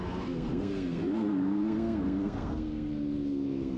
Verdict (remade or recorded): remade